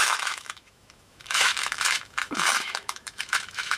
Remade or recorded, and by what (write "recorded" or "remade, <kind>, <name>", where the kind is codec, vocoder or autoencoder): remade, autoencoder, DAC-VAE